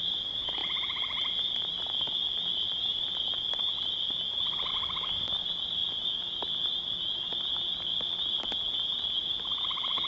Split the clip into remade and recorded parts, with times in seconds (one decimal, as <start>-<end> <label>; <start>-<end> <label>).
0.0-10.1 recorded